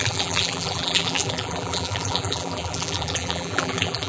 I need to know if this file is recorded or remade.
remade